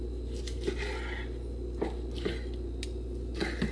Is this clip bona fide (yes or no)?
yes